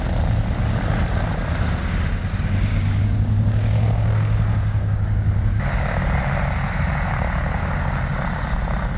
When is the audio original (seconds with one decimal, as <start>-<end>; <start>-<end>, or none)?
0.0-2.7; 6.2-9.0